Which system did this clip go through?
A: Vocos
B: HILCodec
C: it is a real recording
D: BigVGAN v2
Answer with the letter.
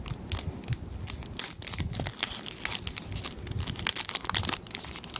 C